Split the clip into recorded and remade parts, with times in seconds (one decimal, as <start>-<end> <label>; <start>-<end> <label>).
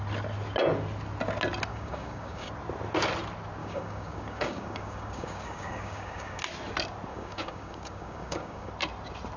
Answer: 0.0-1.7 recorded; 1.7-2.5 remade; 2.5-3.6 recorded; 3.6-6.4 remade; 6.4-7.1 recorded; 7.1-8.7 remade; 8.7-9.4 recorded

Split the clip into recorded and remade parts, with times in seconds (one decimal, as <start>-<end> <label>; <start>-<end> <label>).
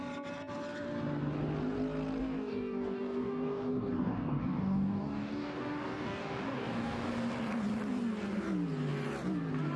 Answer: 0.0-2.2 recorded; 2.2-7.1 remade; 7.1-9.8 recorded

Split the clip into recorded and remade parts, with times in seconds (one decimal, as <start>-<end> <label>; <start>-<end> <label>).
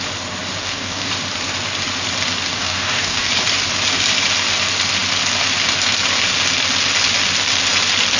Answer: 0.0-0.6 recorded; 0.6-1.1 remade; 1.1-2.5 recorded; 2.5-3.3 remade; 3.3-8.2 recorded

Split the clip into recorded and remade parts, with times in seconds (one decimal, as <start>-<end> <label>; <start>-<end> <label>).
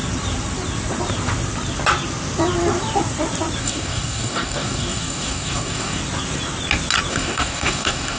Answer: 0.0-3.6 recorded; 3.6-6.0 remade; 6.0-7.1 recorded; 7.1-8.2 remade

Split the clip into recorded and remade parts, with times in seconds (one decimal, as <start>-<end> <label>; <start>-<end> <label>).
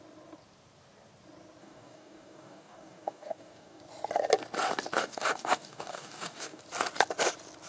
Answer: 0.0-1.6 recorded; 1.6-3.8 remade; 3.8-5.0 recorded; 5.0-6.6 remade; 6.6-7.7 recorded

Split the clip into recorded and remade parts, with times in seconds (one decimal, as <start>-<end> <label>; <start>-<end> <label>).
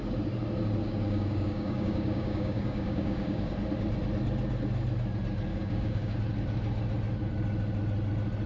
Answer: 0.0-0.8 recorded; 0.8-3.5 remade; 3.5-5.5 recorded; 5.5-6.2 remade; 6.2-8.5 recorded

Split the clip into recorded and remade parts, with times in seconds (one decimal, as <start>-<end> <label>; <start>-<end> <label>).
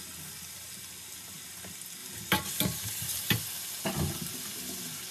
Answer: 0.0-5.1 recorded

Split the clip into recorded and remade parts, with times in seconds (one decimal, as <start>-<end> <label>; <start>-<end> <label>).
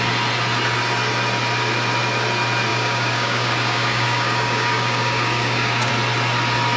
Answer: 0.0-2.7 recorded; 2.7-5.9 remade; 5.9-6.8 recorded